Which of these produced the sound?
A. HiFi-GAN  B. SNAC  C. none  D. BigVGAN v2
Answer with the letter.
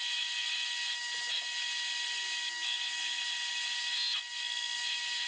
C